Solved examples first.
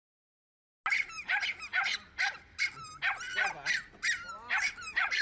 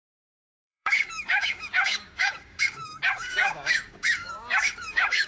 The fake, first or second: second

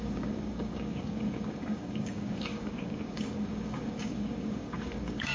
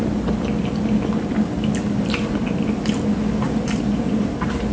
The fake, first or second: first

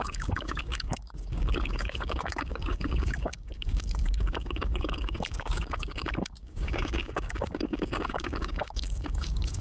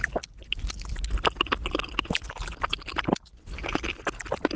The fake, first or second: first